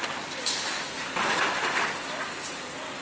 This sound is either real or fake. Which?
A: real